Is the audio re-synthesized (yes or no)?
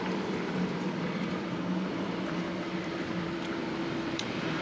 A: yes